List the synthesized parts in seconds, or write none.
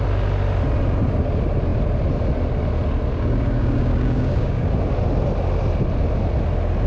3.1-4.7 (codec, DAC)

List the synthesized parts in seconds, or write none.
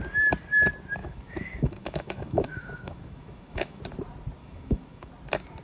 1.0-3.8 (autoencoder, DAC-VAE); 4.4-5.1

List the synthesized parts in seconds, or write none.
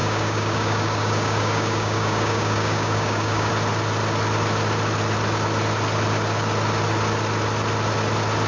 0.0-3.5 (codec, DAC)